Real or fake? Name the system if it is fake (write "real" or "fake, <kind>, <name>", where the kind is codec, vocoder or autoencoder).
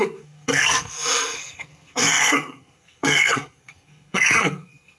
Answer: fake, codec, SNAC